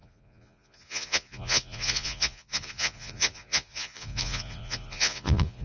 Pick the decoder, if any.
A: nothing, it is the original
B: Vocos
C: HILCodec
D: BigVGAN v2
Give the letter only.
B